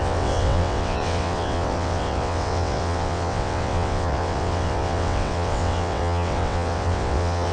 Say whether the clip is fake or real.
fake